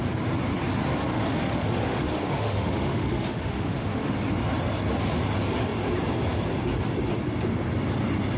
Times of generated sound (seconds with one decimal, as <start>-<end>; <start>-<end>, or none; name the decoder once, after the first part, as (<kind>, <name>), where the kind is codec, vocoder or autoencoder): 1.1-4.1 (autoencoder, DAC-VAE)